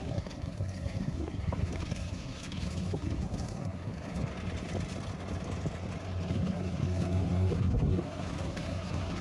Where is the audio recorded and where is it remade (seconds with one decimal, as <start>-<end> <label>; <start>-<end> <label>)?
0.0-4.3 remade; 4.3-6.3 recorded; 6.3-9.2 remade